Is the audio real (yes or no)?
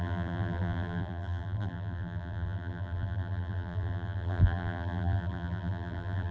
no